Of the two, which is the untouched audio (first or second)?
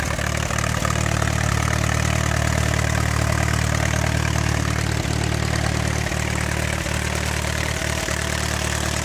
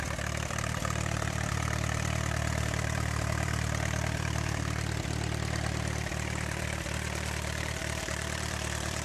first